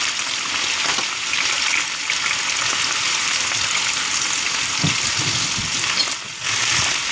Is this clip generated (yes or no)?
no